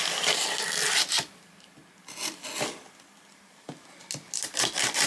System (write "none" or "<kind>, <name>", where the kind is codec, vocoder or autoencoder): none